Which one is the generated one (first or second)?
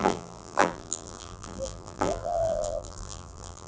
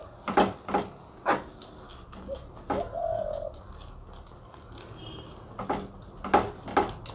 first